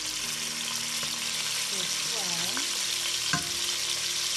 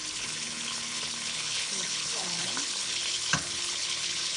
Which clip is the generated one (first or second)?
second